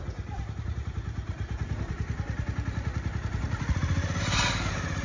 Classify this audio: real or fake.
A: fake